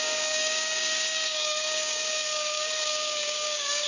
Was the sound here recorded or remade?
remade